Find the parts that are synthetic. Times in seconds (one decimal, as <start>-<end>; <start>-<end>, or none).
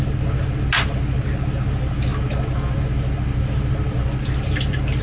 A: none